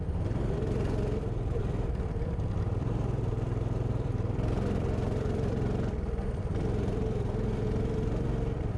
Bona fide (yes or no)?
no